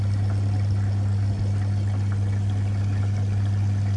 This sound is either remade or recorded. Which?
recorded